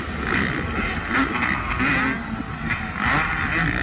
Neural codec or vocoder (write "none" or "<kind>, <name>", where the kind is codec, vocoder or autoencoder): none